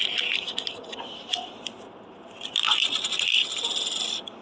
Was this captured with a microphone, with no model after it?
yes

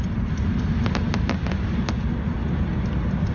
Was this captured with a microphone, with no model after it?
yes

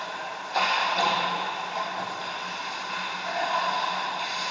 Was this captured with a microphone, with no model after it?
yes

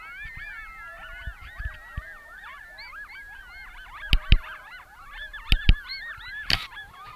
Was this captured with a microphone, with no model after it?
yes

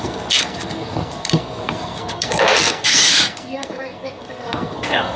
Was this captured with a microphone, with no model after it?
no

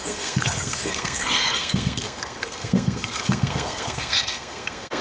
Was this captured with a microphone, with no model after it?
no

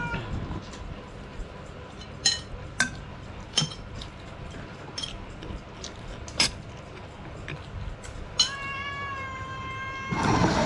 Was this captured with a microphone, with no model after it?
yes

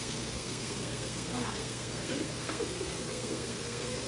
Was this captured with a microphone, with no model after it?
no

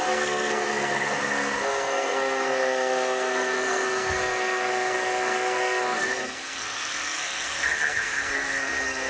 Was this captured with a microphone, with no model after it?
no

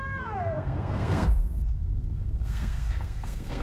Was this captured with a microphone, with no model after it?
no